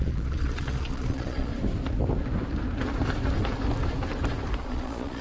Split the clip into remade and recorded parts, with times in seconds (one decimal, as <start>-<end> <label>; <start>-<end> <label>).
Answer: 0.0-1.5 remade; 1.5-4.6 recorded; 4.6-5.2 remade